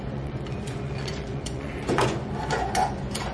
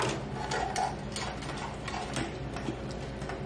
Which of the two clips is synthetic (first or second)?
first